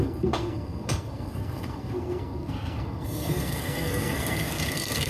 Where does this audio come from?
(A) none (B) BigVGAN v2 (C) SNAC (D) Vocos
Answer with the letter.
C